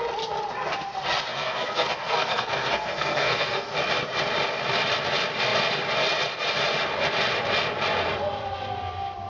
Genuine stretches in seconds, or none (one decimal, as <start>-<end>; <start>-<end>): 0.0-1.3; 3.7-9.3